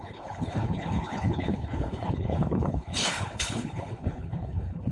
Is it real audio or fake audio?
fake